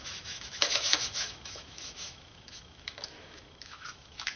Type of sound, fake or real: fake